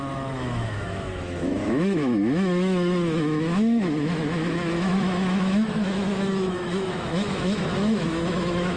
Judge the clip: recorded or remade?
remade